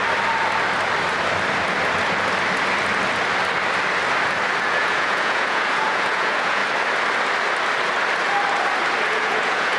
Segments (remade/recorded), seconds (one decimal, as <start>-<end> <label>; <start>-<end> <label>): 0.0-4.6 recorded; 4.6-6.6 remade; 6.6-9.1 recorded; 9.1-9.8 remade